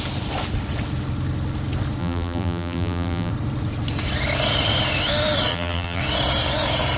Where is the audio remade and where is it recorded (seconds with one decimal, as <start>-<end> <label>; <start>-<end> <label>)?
0.0-2.0 recorded; 2.0-3.3 remade; 3.3-5.5 recorded; 5.5-6.0 remade; 6.0-7.0 recorded